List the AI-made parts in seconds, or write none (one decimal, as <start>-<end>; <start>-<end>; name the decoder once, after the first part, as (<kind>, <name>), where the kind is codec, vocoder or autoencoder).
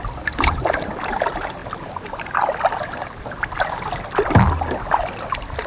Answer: 0.0-1.6 (vocoder, BigVGAN v2); 5.0-5.7